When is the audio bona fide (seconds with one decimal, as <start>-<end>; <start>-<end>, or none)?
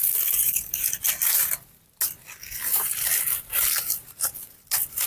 0.0-5.1